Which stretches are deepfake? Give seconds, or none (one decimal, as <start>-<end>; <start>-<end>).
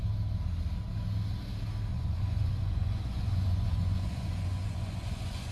1.9-5.5